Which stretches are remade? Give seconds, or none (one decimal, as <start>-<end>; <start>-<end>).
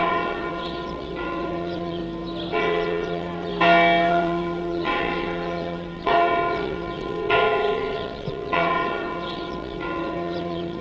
0.0-2.0; 2.5-3.5; 4.1-10.8